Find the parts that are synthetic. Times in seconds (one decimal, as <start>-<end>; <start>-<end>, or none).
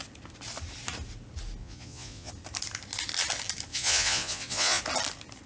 1.6-2.3; 3.7-4.8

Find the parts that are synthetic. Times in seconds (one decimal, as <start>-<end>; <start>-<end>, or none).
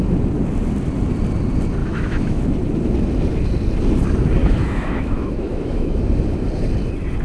1.8-2.4; 4.4-6.0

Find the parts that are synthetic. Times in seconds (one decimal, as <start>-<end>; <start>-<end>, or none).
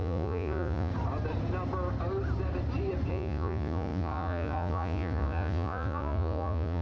0.0-0.9; 3.1-6.8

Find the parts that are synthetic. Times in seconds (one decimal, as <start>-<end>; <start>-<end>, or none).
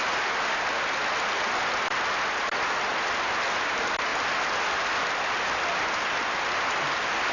none